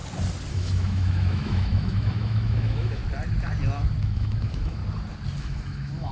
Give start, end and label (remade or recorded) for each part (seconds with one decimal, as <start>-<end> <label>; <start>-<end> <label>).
0.0-0.5 recorded; 0.5-3.0 remade; 3.0-4.0 recorded; 4.0-4.8 remade; 4.8-5.4 recorded; 5.4-6.1 remade